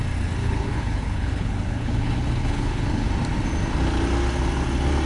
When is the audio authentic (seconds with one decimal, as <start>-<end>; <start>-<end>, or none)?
0.0-0.4; 3.1-5.1